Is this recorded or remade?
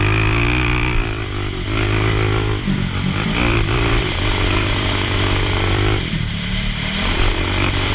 remade